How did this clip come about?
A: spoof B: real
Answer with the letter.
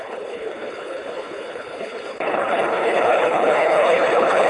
A